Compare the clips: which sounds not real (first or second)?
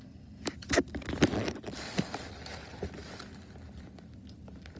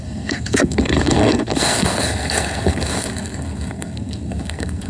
second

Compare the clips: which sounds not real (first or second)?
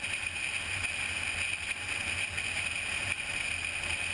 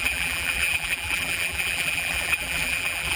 second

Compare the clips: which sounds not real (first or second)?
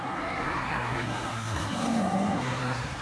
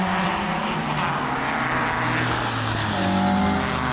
first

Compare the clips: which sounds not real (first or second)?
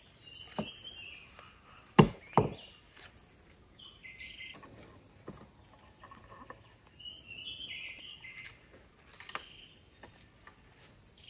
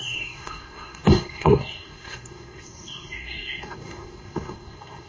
second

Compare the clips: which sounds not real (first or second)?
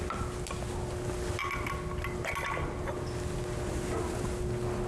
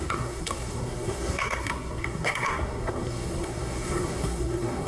second